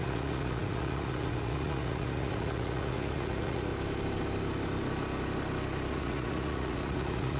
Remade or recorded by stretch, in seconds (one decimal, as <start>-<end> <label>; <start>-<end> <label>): 0.0-3.7 remade; 3.7-5.9 recorded; 5.9-7.4 remade

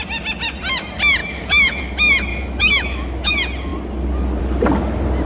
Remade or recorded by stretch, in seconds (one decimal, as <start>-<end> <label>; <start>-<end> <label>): 0.0-1.2 recorded; 1.2-1.8 remade; 1.8-2.3 recorded; 2.3-3.3 remade; 3.3-5.2 recorded

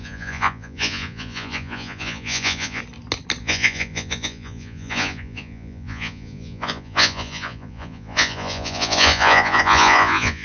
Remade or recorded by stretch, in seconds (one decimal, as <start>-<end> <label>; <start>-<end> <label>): 0.0-2.8 remade; 2.8-3.4 recorded; 3.4-10.4 remade

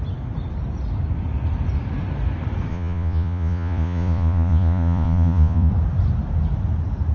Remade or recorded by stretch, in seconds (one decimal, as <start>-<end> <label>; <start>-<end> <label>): 0.0-2.7 recorded; 2.7-5.7 remade; 5.7-7.1 recorded

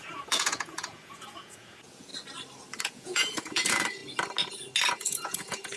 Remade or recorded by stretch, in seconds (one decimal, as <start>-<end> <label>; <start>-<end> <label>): 0.0-2.1 remade; 2.1-2.8 recorded; 2.8-4.0 remade; 4.0-4.9 recorded; 4.9-5.8 remade